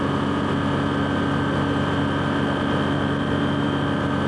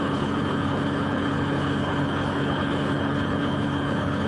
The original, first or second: first